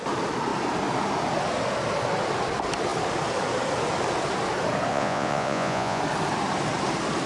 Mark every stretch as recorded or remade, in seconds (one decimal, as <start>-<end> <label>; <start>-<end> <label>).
0.0-4.9 recorded; 4.9-6.0 remade; 6.0-7.3 recorded